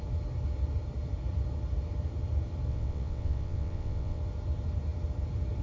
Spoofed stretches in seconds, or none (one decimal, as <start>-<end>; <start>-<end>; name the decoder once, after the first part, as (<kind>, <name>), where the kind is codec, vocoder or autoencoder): 2.7-4.2 (vocoder, WaveNeXt)